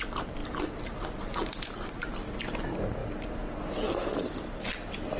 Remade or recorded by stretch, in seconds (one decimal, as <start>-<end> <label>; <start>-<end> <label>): 0.0-5.2 recorded